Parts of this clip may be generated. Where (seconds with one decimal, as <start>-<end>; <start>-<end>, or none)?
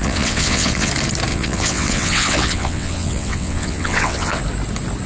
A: 0.0-0.9; 1.3-4.4